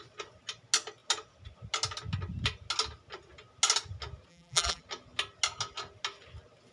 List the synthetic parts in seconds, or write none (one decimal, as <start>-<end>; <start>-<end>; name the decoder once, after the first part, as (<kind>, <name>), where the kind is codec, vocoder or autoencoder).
4.3-4.8 (vocoder, BigVGAN v2)

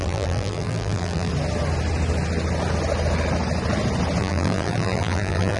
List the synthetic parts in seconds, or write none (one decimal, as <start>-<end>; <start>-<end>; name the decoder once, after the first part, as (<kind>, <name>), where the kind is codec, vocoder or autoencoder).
0.0-1.3 (vocoder, BigVGAN v2); 4.2-5.6

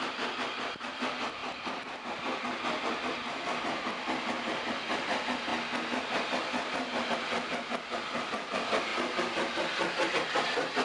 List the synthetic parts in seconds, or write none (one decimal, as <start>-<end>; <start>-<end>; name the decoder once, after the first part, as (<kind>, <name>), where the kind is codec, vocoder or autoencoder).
1.4-2.4 (vocoder, BigVGAN v2)